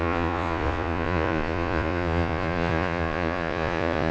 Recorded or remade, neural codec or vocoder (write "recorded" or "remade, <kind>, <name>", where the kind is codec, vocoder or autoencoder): remade, vocoder, Vocos